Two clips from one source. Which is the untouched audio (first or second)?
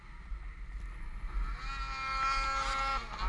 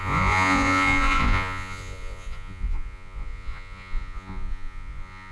first